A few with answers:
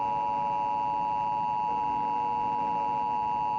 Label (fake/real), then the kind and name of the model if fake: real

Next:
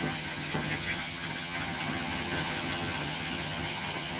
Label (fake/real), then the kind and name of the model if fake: fake, vocoder, HiFi-GAN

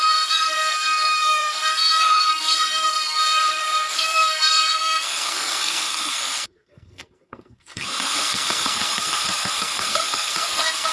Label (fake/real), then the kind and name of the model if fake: fake, codec, SNAC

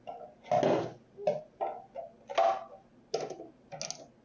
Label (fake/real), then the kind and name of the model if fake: real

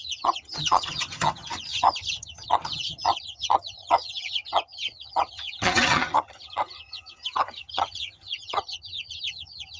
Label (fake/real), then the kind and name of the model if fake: fake, vocoder, HiFi-GAN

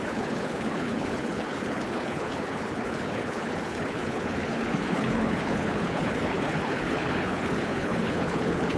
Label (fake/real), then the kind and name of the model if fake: fake, codec, HILCodec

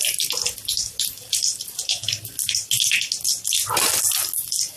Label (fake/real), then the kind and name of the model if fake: real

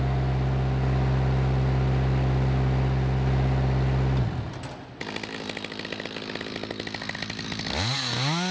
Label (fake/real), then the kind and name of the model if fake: real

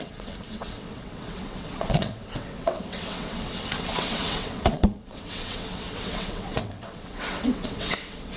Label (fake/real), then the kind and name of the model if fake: fake, vocoder, WaveNeXt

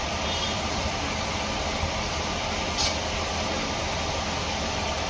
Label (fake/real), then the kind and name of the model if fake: real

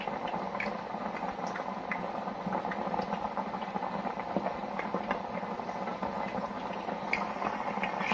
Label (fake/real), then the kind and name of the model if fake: real